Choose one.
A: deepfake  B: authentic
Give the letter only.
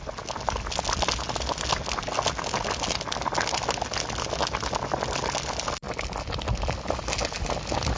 B